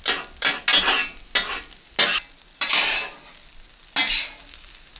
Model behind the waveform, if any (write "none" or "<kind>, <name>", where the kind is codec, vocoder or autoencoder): none